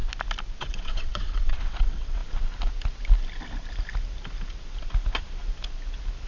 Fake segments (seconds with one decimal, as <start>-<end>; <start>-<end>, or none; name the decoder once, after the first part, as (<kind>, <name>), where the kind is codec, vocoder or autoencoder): 0.6-2.2 (vocoder, WaveNeXt)

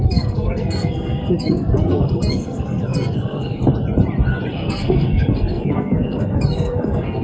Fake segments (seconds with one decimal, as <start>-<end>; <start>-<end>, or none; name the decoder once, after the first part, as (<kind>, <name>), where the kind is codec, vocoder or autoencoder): 0.0-3.6 (codec, SNAC); 4.5-7.2

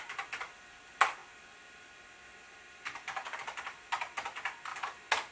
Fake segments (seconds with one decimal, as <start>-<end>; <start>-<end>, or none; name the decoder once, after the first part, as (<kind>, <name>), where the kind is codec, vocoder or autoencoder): none

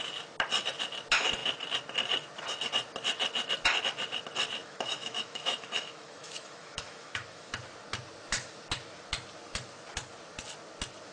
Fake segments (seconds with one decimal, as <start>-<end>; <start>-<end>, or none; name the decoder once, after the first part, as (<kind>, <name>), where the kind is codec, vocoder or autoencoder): 4.6-7.5 (autoencoder, DAC-VAE)

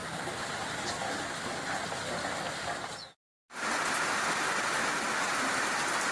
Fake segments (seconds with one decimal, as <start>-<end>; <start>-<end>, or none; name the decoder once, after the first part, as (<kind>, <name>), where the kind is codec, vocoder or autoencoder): 3.7-4.7 (vocoder, BigVGAN v2)

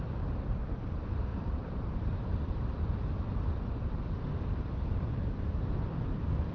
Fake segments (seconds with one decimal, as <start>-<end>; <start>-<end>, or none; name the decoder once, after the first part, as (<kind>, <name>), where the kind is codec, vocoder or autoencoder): 1.3-2.7 (vocoder, BigVGAN v2)

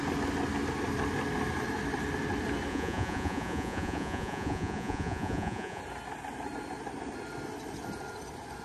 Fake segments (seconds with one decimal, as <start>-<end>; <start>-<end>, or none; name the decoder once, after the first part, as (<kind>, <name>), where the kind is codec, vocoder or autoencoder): 2.7-5.8 (vocoder, Vocos)